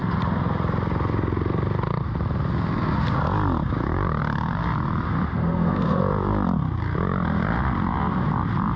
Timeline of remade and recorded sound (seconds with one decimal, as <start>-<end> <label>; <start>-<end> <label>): 0.0-5.3 recorded; 5.3-6.0 remade; 6.0-8.8 recorded